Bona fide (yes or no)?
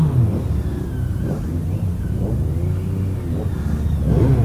yes